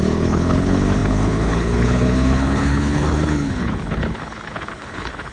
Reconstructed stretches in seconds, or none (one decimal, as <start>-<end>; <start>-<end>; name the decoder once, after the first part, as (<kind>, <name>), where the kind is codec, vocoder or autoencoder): 0.0-5.3 (codec, HILCodec)